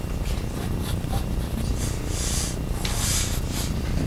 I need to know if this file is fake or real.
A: fake